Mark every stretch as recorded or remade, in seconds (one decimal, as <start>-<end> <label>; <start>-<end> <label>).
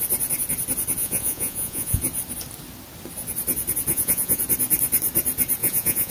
0.0-1.0 recorded; 1.0-2.0 remade; 2.0-3.9 recorded; 3.9-4.4 remade; 4.4-5.6 recorded; 5.6-6.1 remade